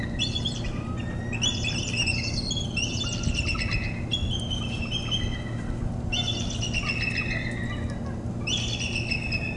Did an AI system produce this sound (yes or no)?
no